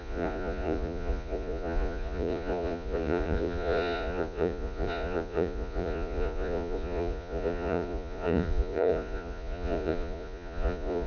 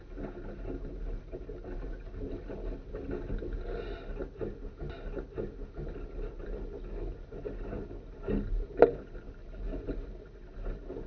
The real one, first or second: second